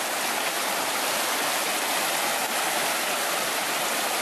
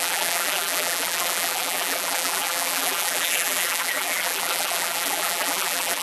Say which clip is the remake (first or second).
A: second